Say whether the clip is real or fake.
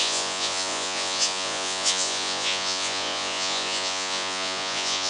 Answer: fake